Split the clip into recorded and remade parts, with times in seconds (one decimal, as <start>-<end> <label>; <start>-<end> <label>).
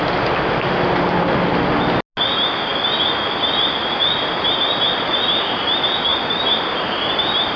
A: 0.0-2.7 recorded; 2.7-5.1 remade; 5.1-6.1 recorded; 6.1-6.7 remade; 6.7-7.6 recorded